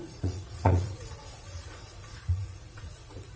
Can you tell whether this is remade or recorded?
remade